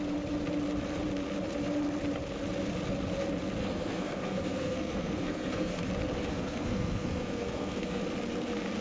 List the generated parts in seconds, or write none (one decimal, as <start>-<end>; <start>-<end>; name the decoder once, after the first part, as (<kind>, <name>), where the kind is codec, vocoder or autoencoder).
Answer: 3.6-5.8 (codec, SNAC); 6.3-8.0